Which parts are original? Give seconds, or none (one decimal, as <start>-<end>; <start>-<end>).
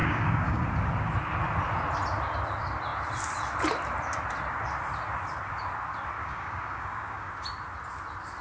0.7-6.2; 7.3-8.4